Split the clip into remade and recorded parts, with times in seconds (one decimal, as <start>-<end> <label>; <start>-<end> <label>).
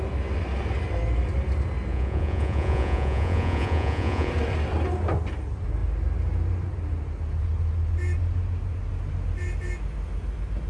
0.0-1.9 recorded; 1.9-4.3 remade; 4.3-10.7 recorded